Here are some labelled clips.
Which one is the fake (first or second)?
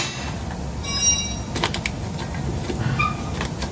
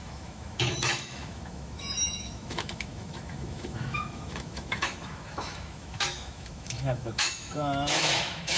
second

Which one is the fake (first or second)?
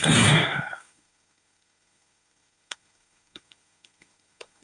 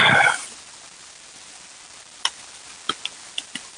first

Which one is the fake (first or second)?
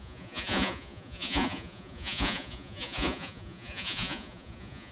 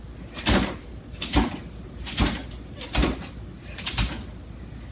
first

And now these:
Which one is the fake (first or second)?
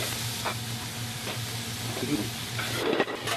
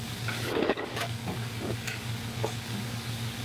second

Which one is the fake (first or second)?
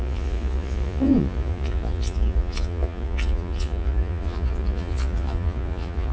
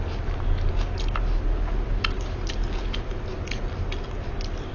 first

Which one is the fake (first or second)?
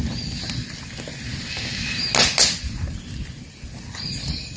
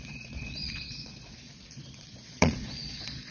second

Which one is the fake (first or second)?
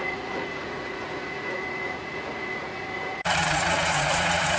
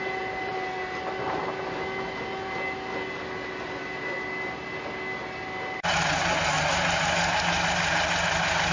first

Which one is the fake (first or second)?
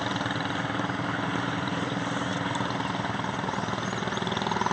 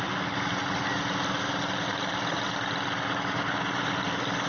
first